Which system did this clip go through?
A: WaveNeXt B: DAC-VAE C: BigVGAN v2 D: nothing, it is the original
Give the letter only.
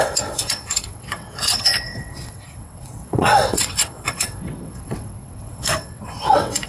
A